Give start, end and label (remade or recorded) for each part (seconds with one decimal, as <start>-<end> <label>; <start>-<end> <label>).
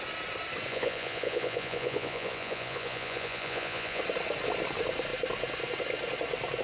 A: 0.0-0.7 recorded; 0.7-4.0 remade; 4.0-6.6 recorded